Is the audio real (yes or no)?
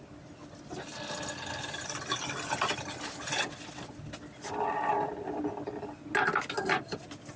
yes